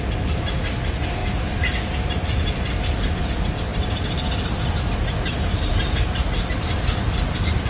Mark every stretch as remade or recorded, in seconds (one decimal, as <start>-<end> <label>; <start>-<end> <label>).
0.0-1.2 recorded; 1.2-3.2 remade; 3.2-5.7 recorded; 5.7-7.7 remade